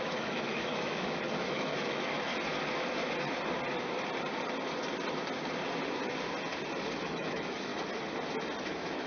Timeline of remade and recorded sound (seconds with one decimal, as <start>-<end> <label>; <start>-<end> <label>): 0.0-2.3 remade; 2.3-7.0 recorded; 7.0-7.7 remade; 7.7-8.6 recorded; 8.6-9.1 remade